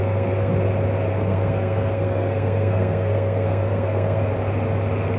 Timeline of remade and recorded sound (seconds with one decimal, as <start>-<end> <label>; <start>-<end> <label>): 0.0-0.5 remade; 0.5-1.1 recorded; 1.1-4.2 remade; 4.2-5.2 recorded